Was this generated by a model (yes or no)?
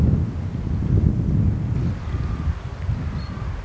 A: no